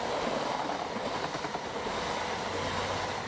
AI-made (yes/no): no